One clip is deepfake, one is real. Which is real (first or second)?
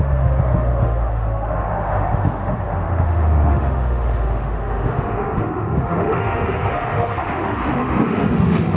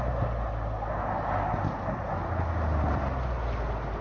second